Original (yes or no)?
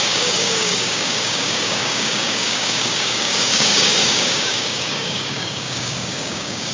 no